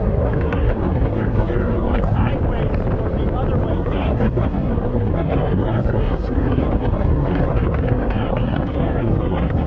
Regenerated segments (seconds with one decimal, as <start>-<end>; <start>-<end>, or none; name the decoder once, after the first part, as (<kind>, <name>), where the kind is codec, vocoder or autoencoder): 0.0-2.3 (codec, SNAC); 3.7-9.7